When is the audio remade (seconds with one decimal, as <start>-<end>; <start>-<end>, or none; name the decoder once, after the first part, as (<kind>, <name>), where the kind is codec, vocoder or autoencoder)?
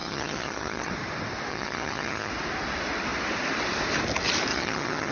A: 0.0-0.9 (vocoder, HiFi-GAN); 1.5-2.3; 4.5-5.1